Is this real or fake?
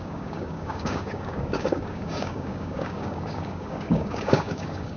fake